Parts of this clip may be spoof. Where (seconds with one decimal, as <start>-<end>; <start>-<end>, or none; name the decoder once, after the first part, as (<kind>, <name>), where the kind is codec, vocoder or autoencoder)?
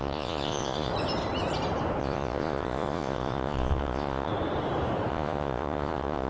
0.0-0.9 (vocoder, Vocos); 2.0-4.3; 5.1-6.3